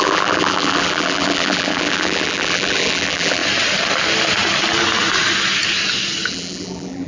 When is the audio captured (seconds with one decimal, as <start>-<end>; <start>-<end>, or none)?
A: 3.4-6.3